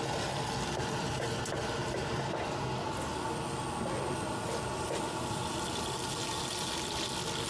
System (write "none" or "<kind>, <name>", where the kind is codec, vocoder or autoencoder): none